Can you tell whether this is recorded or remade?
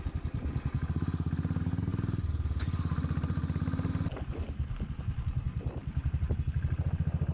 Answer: recorded